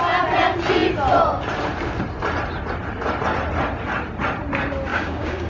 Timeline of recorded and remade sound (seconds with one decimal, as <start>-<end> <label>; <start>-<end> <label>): 0.0-4.9 recorded; 4.9-5.5 remade